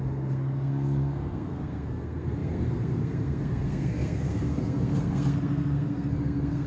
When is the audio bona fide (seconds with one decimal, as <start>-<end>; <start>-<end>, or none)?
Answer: none